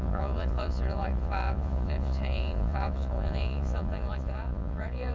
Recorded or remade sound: remade